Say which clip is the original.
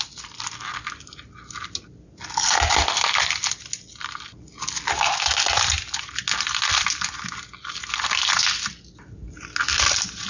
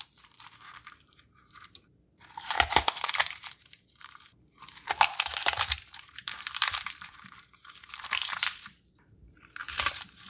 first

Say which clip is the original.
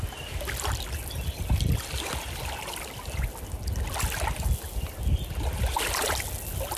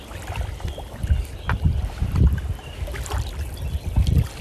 first